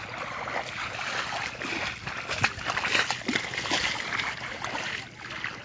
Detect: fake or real real